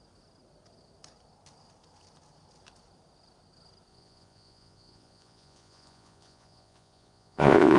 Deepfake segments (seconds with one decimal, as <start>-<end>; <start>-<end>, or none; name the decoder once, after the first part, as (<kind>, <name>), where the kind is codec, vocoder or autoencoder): 3.9-7.8 (vocoder, Vocos)